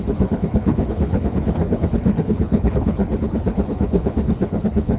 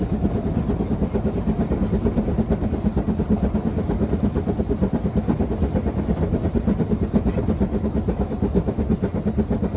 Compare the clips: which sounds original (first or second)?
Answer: second